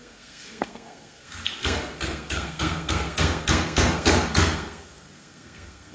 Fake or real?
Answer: fake